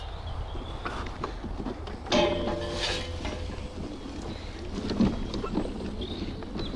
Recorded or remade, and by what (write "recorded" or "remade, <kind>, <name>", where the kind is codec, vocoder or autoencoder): recorded